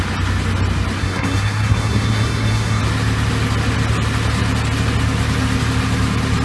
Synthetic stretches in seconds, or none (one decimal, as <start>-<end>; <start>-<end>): 1.0-2.8